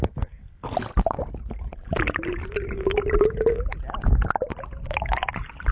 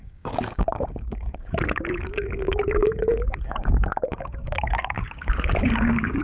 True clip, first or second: first